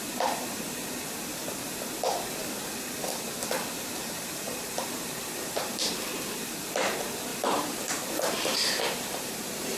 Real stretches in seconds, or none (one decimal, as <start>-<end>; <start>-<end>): 0.0-4.0; 5.9-7.3; 9.3-9.8

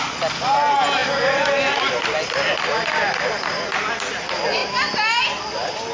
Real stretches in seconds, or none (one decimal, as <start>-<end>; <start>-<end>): 0.0-5.9

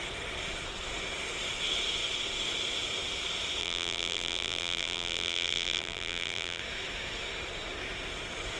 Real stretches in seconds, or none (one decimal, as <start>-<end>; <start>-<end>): 0.0-3.6; 6.6-8.6